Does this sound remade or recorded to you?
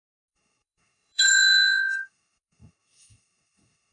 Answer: remade